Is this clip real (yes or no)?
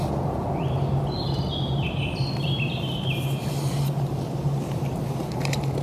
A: yes